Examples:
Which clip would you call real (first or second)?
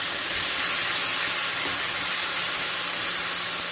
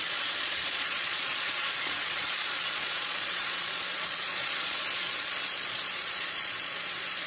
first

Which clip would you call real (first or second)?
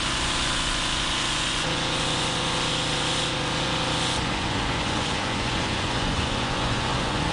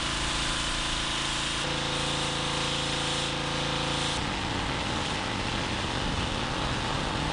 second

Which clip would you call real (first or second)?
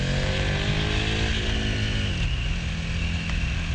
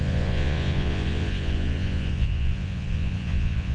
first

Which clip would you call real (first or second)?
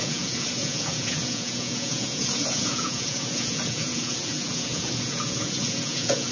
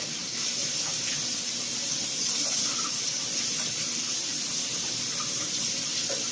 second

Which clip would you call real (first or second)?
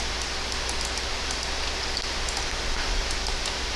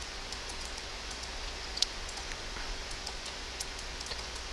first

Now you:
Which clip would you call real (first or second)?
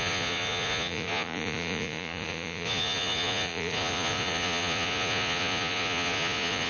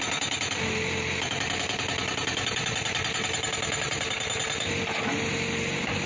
second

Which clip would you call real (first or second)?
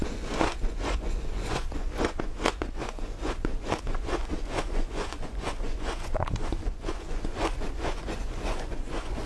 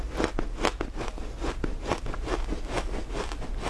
second